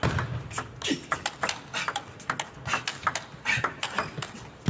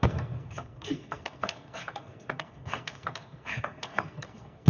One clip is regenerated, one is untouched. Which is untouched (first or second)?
first